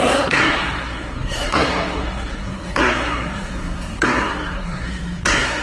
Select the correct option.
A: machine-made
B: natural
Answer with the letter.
A